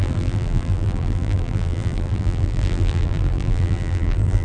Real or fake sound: fake